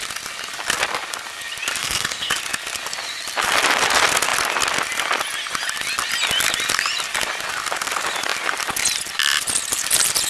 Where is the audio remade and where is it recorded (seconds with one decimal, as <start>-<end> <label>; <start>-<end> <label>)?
0.0-1.8 recorded; 1.8-2.3 remade; 2.3-10.3 recorded